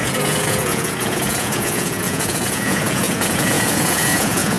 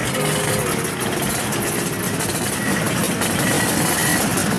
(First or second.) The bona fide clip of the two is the second